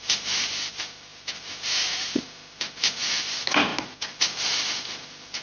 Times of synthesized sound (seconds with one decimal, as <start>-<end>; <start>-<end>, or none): none